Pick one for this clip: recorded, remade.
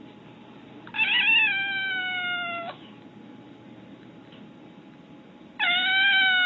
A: recorded